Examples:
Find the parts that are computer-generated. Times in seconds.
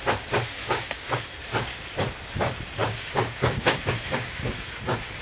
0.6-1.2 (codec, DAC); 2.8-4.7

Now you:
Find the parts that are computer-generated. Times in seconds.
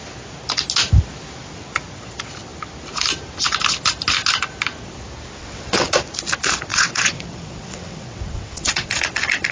5.4-5.9 (vocoder, WaveNeXt); 6.7-9.0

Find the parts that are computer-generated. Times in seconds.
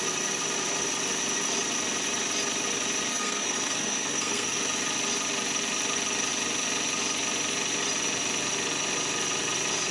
3.1-4.6 (codec, SNAC)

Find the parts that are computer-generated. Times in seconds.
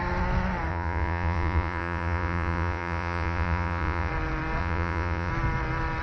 0.7-4.1 (vocoder, Vocos); 4.6-5.3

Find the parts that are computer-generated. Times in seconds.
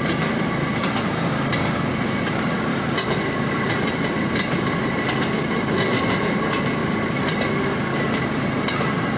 2.7-4.9 (vocoder, BigVGAN v2); 6.8-7.8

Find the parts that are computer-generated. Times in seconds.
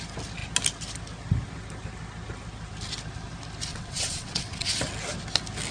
3.7-4.7 (vocoder, WaveNeXt)